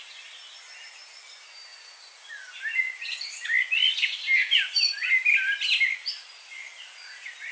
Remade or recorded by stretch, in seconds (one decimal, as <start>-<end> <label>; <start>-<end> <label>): 0.0-7.5 recorded